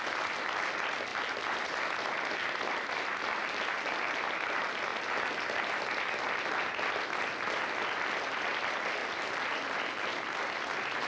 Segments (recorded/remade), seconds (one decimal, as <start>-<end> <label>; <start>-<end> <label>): 0.0-11.1 recorded